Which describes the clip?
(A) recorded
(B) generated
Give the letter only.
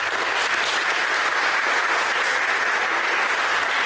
A